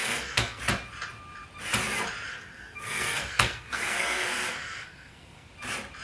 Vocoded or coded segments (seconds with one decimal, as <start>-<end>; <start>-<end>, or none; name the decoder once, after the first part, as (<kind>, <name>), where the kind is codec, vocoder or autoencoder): 0.0-0.6 (codec, SNAC); 2.3-5.5